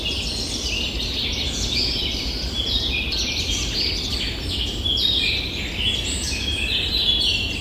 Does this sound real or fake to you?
real